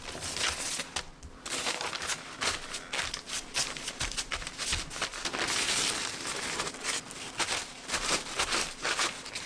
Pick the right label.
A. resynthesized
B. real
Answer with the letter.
B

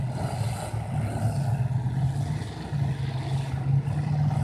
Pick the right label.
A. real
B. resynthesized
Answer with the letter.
A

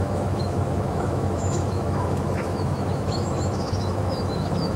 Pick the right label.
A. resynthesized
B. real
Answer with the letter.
A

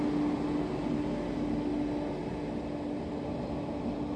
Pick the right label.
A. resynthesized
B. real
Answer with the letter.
B